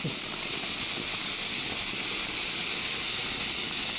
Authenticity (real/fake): real